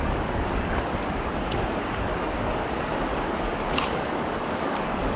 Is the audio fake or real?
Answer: fake